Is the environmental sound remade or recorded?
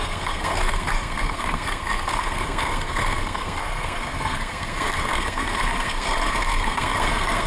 remade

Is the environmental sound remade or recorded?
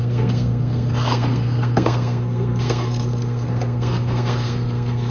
remade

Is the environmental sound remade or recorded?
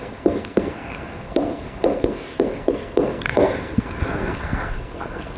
remade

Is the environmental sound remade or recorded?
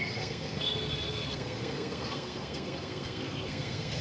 remade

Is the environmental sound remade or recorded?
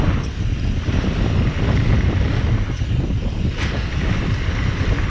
recorded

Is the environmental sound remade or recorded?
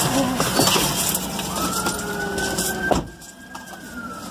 recorded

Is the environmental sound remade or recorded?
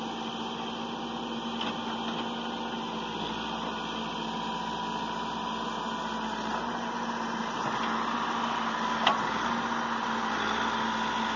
recorded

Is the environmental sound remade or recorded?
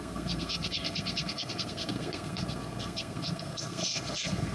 remade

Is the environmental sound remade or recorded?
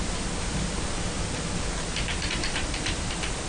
recorded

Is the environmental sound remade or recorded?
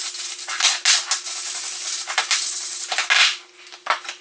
recorded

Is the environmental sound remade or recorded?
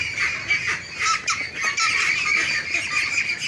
recorded